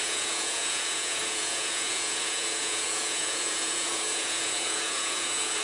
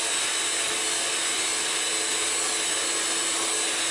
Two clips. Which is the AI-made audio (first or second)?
first